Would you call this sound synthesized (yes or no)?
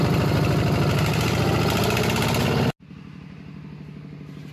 no